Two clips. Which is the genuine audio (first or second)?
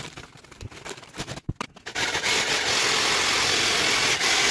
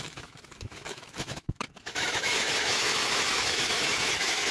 first